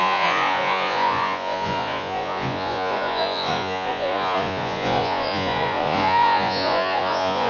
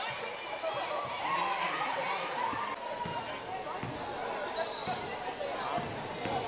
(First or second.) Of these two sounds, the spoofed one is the first